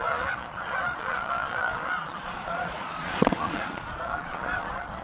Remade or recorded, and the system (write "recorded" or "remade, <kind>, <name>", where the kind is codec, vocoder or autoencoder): remade, vocoder, Vocos